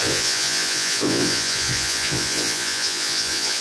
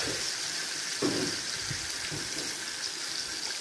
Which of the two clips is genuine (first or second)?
second